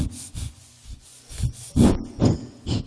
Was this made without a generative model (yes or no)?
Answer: no